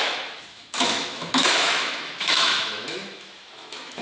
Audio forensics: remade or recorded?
remade